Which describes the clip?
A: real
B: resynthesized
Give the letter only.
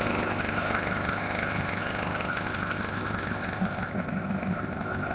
B